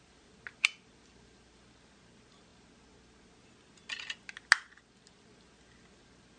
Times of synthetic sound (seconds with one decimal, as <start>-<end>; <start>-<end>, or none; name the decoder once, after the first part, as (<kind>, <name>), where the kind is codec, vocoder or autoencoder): none